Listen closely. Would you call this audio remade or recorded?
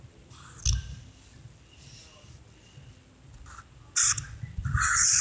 recorded